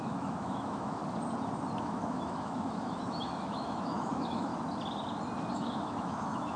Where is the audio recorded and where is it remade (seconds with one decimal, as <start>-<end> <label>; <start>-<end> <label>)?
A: 0.0-1.0 remade; 1.0-1.8 recorded; 1.8-4.5 remade; 4.5-5.5 recorded; 5.5-6.6 remade